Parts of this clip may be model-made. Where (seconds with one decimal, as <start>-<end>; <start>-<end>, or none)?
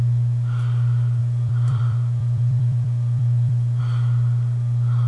1.2-3.8